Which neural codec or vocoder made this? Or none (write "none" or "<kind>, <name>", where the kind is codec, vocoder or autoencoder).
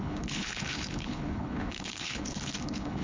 codec, HILCodec